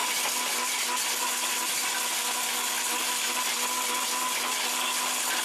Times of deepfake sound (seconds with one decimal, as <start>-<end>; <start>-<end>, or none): none